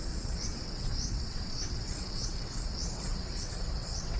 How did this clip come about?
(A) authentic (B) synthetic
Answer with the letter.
B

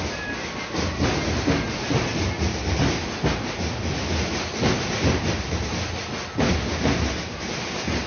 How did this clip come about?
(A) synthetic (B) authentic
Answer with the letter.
B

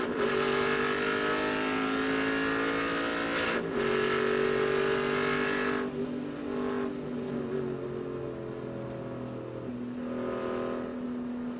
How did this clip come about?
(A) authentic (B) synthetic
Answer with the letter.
A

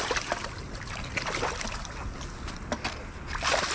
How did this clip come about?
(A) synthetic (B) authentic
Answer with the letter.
B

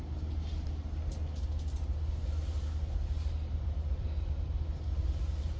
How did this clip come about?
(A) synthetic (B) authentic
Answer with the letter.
B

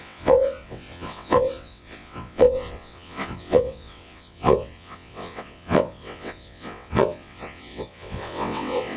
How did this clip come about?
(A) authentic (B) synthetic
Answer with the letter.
B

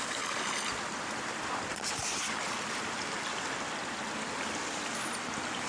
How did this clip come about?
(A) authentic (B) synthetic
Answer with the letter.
A